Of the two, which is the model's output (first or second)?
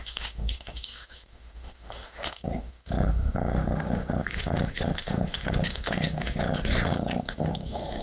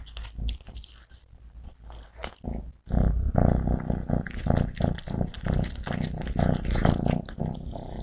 first